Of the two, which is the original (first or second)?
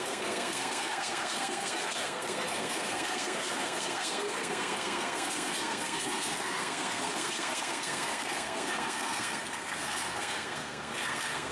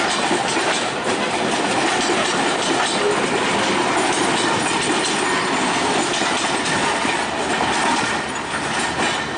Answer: second